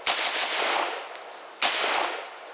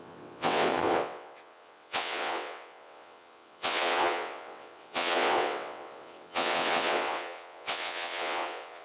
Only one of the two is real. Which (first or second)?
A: first